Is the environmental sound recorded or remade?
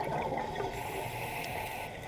recorded